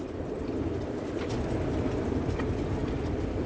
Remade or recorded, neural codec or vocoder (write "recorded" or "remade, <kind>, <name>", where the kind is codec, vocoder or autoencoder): recorded